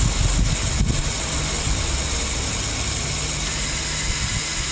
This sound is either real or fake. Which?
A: real